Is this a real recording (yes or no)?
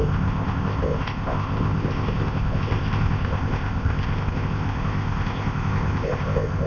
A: no